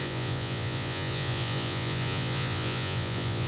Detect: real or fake fake